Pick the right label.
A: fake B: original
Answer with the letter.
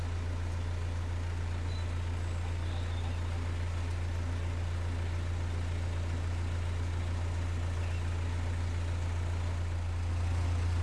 B